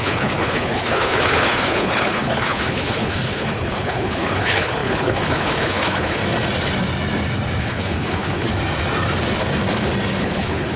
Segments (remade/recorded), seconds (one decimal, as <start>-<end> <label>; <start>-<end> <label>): 0.0-6.2 remade; 6.2-7.6 recorded; 7.6-8.5 remade; 8.5-10.2 recorded; 10.2-10.8 remade